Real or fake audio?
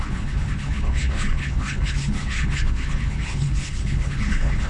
fake